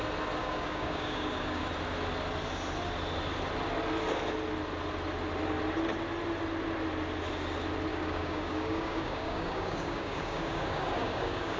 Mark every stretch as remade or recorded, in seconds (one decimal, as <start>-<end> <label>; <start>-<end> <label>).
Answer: 0.0-0.4 recorded; 0.4-1.6 remade; 1.6-7.9 recorded; 7.9-11.6 remade

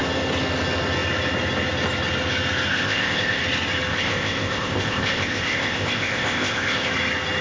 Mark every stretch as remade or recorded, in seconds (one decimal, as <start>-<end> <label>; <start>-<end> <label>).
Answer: 0.0-2.7 recorded; 2.7-3.4 remade; 3.4-3.9 recorded; 3.9-6.9 remade; 6.9-7.4 recorded